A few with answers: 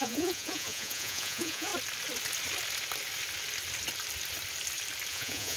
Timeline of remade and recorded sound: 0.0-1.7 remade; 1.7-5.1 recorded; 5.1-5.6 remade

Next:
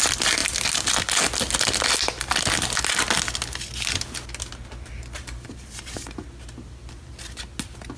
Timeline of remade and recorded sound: 0.0-8.0 recorded

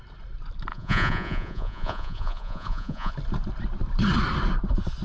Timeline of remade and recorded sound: 0.0-0.7 recorded; 0.7-3.1 remade; 3.1-5.0 recorded

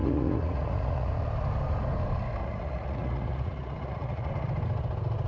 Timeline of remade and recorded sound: 0.0-1.1 remade; 1.1-2.4 recorded; 2.4-4.3 remade; 4.3-5.3 recorded

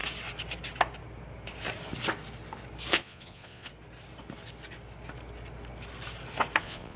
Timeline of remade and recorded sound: 0.0-2.9 recorded; 2.9-3.7 remade; 3.7-6.6 recorded; 6.6-7.0 remade

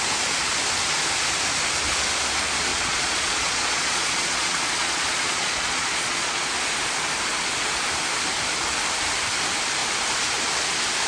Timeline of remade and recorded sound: 0.0-2.7 recorded; 2.7-6.5 remade; 6.5-11.1 recorded